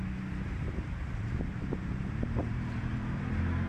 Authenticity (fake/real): fake